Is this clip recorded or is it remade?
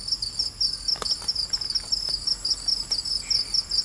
recorded